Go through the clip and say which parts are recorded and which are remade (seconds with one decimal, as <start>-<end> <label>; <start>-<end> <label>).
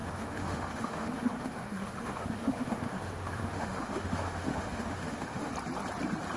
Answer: 0.0-5.5 remade; 5.5-6.4 recorded